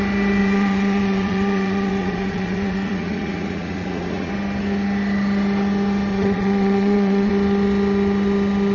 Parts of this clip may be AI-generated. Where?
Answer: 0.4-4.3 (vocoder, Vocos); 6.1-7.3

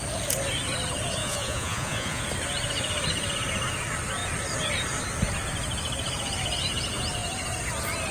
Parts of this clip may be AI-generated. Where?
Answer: 1.2-2.2 (vocoder, Vocos)

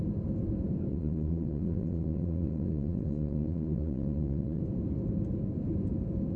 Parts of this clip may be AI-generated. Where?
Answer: 0.9-4.6 (vocoder, Vocos)

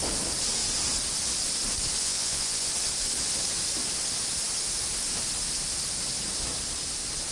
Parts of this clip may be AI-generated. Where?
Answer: 2.0-2.7 (vocoder, Vocos)

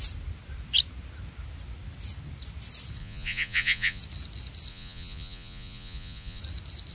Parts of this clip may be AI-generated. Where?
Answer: 3.0-4.0 (vocoder, Vocos); 4.7-6.4

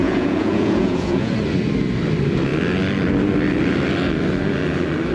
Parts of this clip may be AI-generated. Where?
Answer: 0.0-1.3 (vocoder, Vocos)

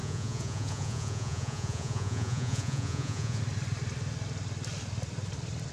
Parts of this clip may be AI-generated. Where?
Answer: 0.0-3.4 (vocoder, Vocos)

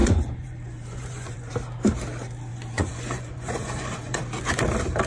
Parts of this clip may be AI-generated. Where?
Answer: 0.0-1.5 (vocoder, Vocos); 2.5-4.2